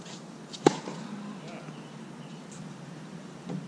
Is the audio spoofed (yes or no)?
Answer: no